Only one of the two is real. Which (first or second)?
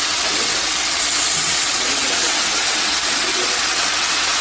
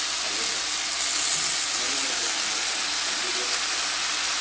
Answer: second